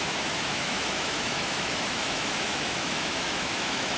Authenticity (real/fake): fake